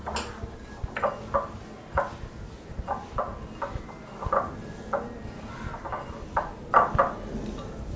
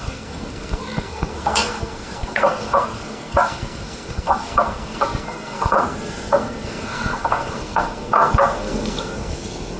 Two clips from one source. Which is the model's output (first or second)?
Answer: second